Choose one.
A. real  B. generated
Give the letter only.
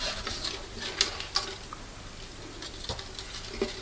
A